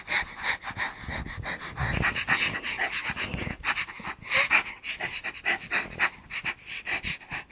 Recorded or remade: recorded